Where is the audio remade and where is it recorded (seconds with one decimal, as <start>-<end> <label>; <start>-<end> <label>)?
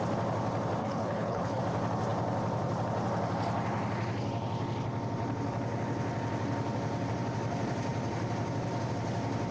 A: 0.0-0.8 recorded; 0.8-1.6 remade; 1.6-9.5 recorded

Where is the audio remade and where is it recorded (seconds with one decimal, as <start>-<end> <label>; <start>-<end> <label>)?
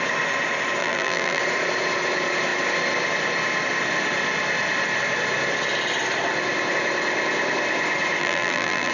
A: 0.0-0.8 recorded; 0.8-1.4 remade; 1.4-8.2 recorded; 8.2-8.9 remade